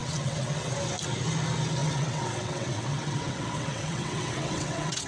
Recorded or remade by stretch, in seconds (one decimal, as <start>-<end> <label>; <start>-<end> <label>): 0.0-0.7 remade; 0.7-1.8 recorded; 1.8-5.1 remade